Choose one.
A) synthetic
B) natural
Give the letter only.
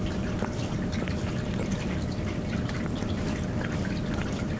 B